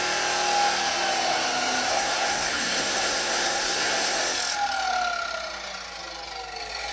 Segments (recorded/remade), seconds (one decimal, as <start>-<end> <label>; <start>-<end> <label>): 0.0-1.9 recorded; 1.9-4.2 remade; 4.2-6.9 recorded